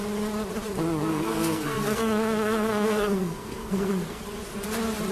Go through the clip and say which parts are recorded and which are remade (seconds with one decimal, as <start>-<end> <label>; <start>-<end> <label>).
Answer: 0.0-1.1 recorded; 1.1-4.2 remade; 4.2-5.1 recorded